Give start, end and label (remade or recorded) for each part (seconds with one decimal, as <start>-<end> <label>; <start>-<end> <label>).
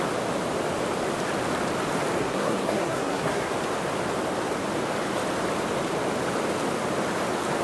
0.0-2.2 recorded; 2.2-3.5 remade; 3.5-7.6 recorded